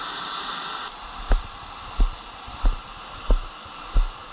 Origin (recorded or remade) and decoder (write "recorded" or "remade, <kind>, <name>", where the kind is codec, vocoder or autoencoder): remade, vocoder, BigVGAN v2